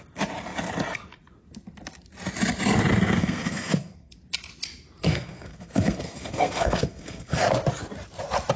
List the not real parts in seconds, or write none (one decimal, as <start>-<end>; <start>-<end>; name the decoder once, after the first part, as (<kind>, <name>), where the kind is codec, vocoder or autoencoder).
3.2-4.1 (codec, SNAC); 5.0-7.5